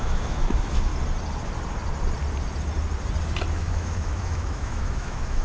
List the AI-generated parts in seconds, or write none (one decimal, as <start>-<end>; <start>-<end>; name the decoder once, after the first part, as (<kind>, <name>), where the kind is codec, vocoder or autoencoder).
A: 0.0-0.9 (autoencoder, DAC-VAE); 3.5-5.4